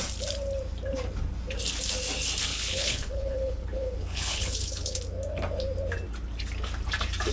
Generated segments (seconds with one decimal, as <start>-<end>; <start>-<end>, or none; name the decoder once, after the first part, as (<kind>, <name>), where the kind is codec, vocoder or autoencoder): 2.5-5.0 (codec, HILCodec)